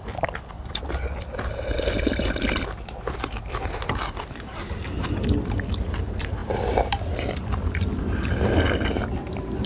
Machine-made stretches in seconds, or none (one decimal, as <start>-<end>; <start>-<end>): none